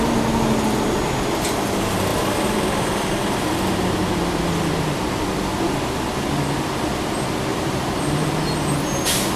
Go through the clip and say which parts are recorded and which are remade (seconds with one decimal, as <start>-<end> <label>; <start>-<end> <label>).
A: 0.0-7.5 recorded; 7.5-8.4 remade; 8.4-9.4 recorded